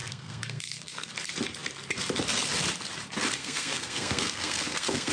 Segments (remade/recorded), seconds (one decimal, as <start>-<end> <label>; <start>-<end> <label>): 0.0-1.1 remade; 1.1-3.4 recorded; 3.4-5.1 remade